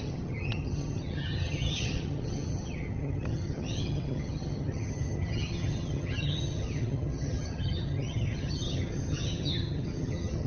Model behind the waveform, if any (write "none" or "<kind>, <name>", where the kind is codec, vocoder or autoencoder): vocoder, HiFi-GAN